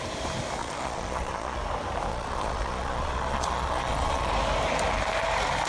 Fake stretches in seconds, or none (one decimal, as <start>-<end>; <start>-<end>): 0.6-1.6; 2.1-4.3